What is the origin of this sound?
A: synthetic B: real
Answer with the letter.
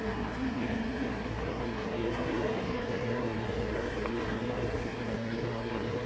A